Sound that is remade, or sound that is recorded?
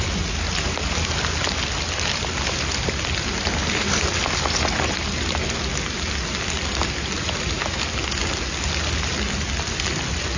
recorded